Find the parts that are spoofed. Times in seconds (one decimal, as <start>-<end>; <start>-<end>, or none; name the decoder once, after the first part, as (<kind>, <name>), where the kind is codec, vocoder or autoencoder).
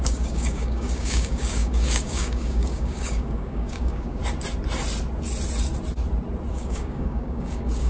0.0-4.2 (codec, DAC); 6.5-7.9